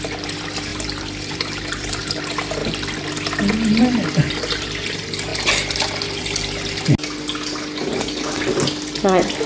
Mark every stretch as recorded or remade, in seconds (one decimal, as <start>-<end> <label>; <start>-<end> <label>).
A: 0.0-0.7 recorded; 0.7-2.2 remade; 2.2-2.6 recorded; 2.6-3.1 remade; 3.1-9.5 recorded